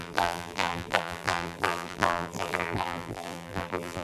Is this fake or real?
fake